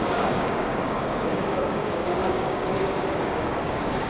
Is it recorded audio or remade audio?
remade